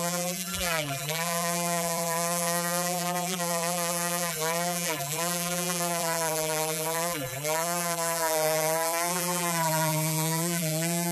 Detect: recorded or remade remade